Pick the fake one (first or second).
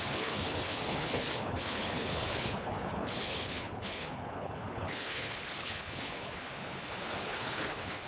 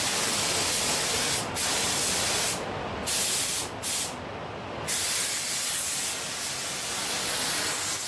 first